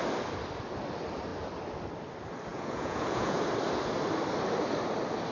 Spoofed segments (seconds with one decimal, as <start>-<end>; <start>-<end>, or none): 2.5-3.4